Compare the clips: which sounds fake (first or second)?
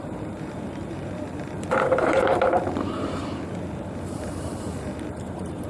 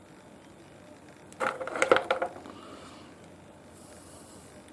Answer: first